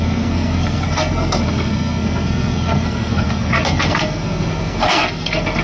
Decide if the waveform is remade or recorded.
remade